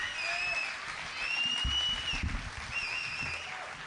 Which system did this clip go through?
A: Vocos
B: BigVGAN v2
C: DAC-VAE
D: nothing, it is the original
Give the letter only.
D